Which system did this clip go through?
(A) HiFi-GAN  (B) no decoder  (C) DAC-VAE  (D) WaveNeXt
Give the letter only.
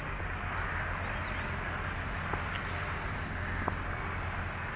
B